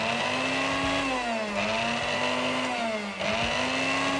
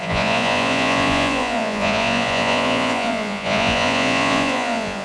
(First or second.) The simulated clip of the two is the second